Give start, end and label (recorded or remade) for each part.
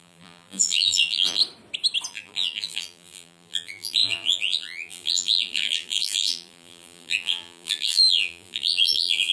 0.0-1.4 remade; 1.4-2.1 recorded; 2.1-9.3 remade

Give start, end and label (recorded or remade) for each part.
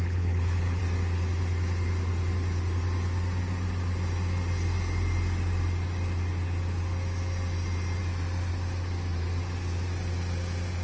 0.0-0.8 remade; 0.8-10.8 recorded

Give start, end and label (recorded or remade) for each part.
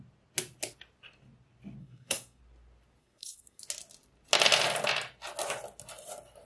0.0-1.8 recorded; 1.8-2.4 remade; 2.4-3.0 recorded; 3.0-3.6 remade; 3.6-6.5 recorded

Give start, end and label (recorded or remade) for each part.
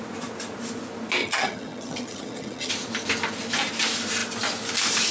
0.0-1.2 recorded; 1.2-2.7 remade; 2.7-5.1 recorded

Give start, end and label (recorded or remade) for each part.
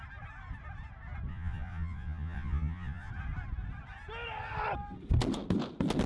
0.0-1.3 recorded; 1.3-3.1 remade; 3.1-6.1 recorded